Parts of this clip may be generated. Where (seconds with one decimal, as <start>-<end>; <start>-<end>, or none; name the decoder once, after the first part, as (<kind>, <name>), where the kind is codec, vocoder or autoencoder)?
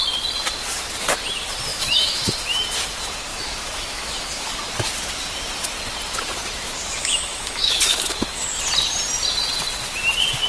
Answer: 1.7-2.3 (autoencoder, DAC-VAE); 3.3-4.6; 6.8-8.4